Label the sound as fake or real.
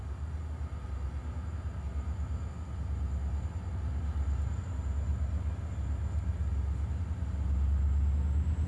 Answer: real